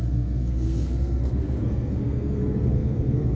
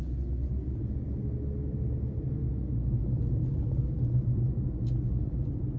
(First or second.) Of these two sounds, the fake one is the first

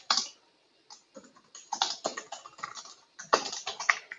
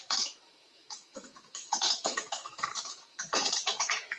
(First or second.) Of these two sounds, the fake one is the second